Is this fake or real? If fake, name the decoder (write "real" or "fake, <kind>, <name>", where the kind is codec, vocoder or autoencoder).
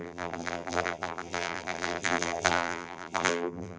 fake, vocoder, BigVGAN v2